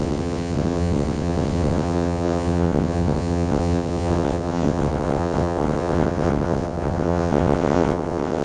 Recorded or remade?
remade